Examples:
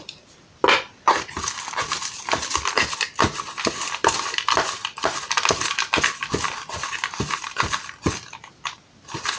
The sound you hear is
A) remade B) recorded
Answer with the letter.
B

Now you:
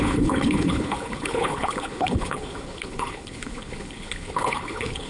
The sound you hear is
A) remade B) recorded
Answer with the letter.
A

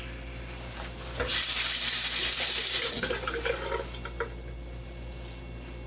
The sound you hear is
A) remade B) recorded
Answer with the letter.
B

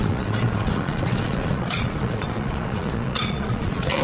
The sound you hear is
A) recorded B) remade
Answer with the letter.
B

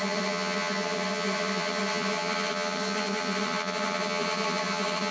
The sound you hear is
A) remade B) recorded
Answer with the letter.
A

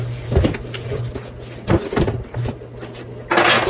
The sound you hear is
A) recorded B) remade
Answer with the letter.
A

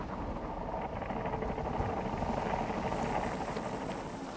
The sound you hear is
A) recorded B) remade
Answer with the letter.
A